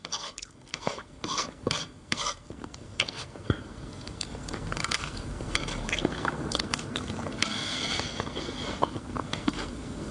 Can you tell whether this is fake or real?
fake